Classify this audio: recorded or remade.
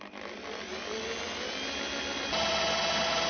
recorded